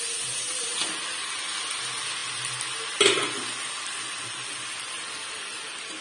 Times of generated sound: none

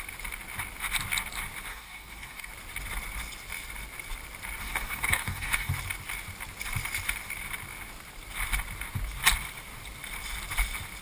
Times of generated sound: 1.7-2.5 (codec, DAC); 4.6-5.7

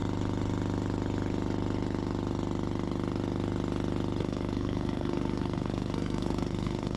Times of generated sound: 4.2-7.0 (codec, SNAC)

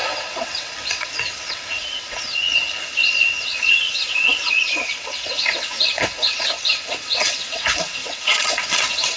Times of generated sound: 0.0-9.2 (vocoder, WaveNeXt)